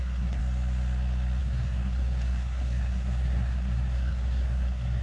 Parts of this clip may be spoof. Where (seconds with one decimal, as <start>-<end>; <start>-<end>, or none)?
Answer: 0.0-0.4; 1.4-5.0